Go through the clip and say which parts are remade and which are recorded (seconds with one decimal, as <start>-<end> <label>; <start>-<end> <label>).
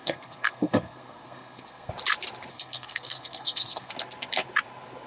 0.0-1.9 remade; 1.9-2.5 recorded; 2.5-3.9 remade; 3.9-5.1 recorded